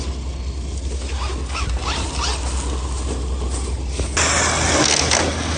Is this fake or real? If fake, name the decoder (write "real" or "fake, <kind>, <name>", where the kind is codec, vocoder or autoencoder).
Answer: real